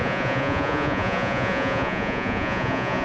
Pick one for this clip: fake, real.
fake